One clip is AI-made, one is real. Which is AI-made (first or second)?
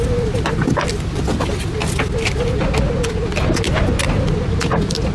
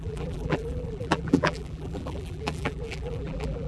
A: second